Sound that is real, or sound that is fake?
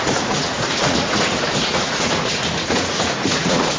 fake